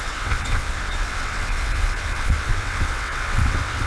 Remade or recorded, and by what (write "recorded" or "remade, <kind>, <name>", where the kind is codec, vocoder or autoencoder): remade, vocoder, WaveNeXt